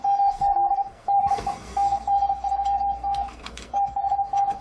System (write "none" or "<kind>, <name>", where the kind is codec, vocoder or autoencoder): codec, SNAC